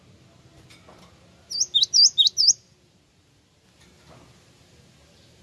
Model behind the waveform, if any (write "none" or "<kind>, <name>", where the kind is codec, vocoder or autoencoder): none